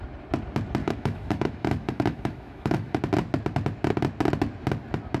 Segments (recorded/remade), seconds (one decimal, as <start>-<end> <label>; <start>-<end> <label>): 0.0-0.8 recorded; 0.8-3.0 remade; 3.0-5.2 recorded